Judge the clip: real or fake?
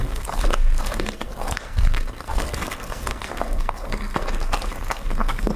fake